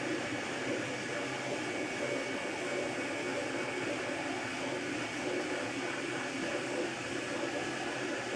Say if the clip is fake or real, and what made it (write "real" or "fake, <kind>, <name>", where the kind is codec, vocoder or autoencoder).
real